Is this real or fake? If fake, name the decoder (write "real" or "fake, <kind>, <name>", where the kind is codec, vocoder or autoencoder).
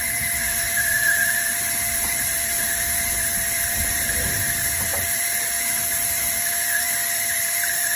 fake, vocoder, BigVGAN v2